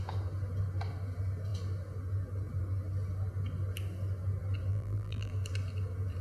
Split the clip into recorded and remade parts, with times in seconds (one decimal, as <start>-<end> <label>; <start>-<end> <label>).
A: 0.0-4.7 recorded; 4.7-5.3 remade; 5.3-6.2 recorded